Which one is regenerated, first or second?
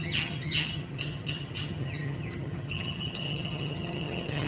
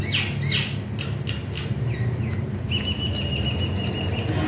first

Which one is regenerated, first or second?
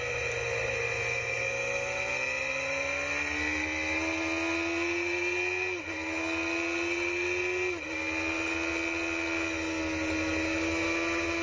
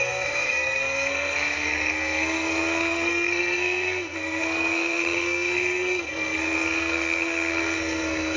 second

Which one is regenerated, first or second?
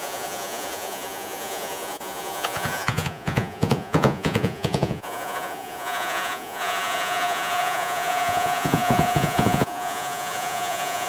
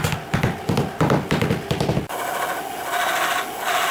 first